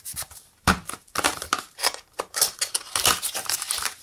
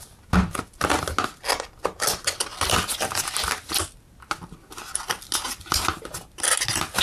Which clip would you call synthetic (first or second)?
first